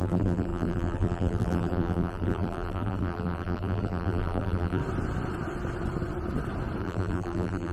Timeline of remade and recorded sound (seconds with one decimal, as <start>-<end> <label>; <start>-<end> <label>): 0.0-4.8 remade; 4.8-6.8 recorded; 6.8-7.7 remade